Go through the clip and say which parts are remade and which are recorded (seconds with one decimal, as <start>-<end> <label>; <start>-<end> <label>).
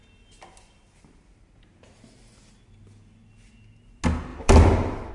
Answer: 0.0-5.1 recorded